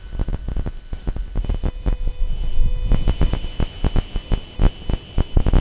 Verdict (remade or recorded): recorded